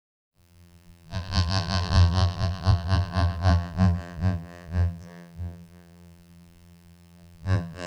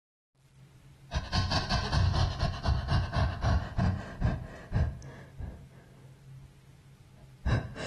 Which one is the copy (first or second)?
first